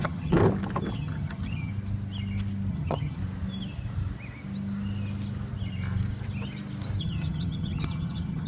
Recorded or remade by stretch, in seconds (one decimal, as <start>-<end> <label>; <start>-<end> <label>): 0.0-0.4 remade; 0.4-0.9 recorded; 0.9-1.7 remade; 1.7-2.7 recorded; 2.7-3.2 remade; 3.2-7.0 recorded; 7.0-8.5 remade